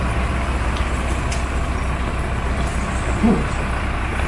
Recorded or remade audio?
recorded